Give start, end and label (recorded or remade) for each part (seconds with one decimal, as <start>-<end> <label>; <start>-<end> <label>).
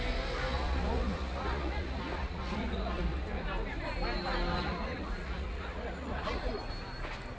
0.0-0.5 recorded; 0.5-3.4 remade; 3.4-4.5 recorded; 4.5-6.5 remade; 6.5-7.4 recorded